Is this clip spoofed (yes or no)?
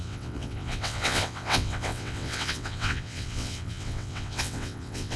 yes